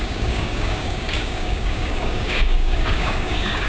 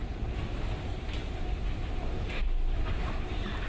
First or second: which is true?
second